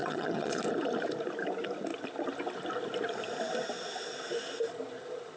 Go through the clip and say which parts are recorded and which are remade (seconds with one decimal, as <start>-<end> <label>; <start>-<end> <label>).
0.0-0.6 remade; 0.6-5.4 recorded